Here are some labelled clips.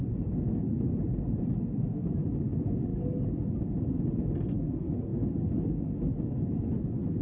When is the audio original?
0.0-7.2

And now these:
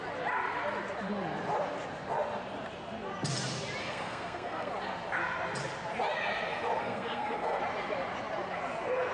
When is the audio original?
0.0-3.8; 4.7-6.8; 7.6-9.1

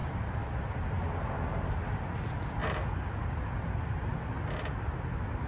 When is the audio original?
0.0-5.5

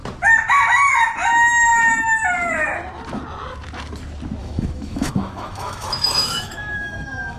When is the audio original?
0.0-4.4

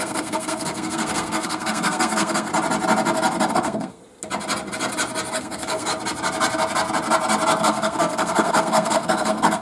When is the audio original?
2.5-3.5; 4.0-5.3; 5.9-7.6

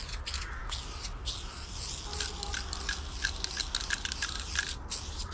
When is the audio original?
0.0-5.3

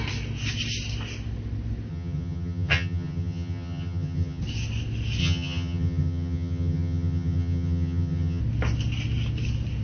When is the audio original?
0.0-1.9; 4.4-5.2; 8.4-9.8

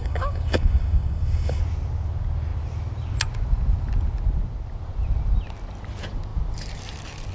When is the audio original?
1.6-7.3